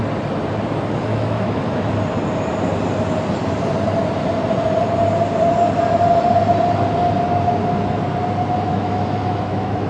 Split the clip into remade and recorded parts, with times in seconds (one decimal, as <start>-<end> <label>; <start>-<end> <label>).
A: 0.0-1.1 recorded; 1.1-1.9 remade; 1.9-8.7 recorded; 8.7-9.9 remade